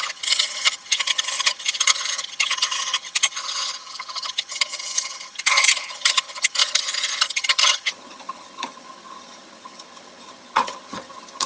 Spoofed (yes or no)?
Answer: yes